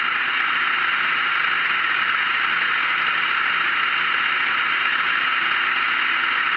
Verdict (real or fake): real